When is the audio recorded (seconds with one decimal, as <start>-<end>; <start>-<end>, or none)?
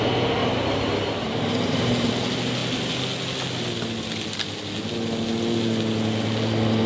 0.0-0.4; 2.1-6.9